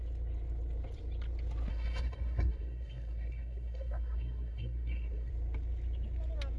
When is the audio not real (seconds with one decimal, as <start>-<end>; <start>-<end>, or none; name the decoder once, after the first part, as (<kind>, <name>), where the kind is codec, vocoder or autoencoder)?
1.7-5.3 (codec, SNAC)